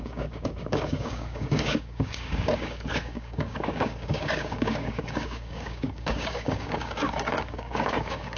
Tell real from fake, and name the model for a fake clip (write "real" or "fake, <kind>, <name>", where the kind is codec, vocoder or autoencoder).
fake, codec, DAC